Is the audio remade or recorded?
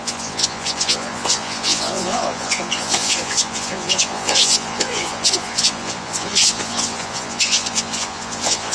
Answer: remade